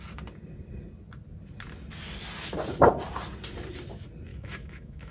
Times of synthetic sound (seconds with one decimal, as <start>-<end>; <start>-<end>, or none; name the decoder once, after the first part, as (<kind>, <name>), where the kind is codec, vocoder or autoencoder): 4.3-5.1 (autoencoder, DAC-VAE)